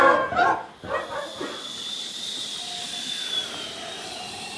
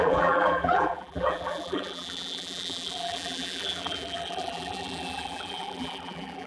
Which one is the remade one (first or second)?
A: second